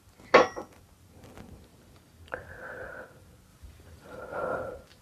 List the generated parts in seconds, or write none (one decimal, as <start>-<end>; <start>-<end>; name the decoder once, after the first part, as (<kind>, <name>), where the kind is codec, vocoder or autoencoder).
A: 1.7-2.4 (vocoder, BigVGAN v2); 3.5-4.2